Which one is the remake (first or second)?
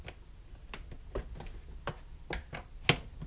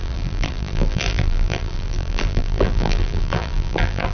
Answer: second